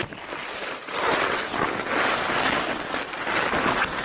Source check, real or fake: real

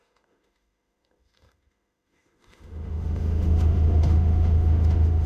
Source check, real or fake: fake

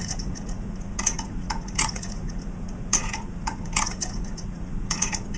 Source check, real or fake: fake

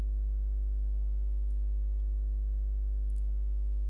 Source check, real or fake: fake